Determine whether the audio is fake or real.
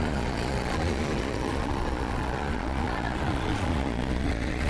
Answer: fake